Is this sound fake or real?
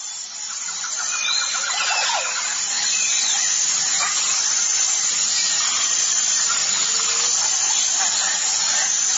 real